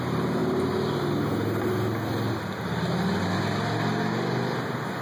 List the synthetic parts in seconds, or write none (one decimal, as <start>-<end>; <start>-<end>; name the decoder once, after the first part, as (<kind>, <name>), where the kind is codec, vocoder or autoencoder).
none